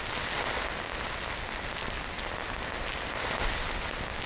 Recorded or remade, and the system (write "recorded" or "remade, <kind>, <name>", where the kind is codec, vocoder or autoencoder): recorded